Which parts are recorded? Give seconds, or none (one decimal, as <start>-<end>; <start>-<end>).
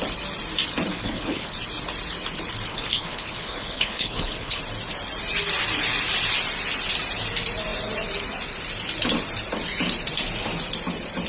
0.0-0.9; 1.5-2.7; 4.6-11.3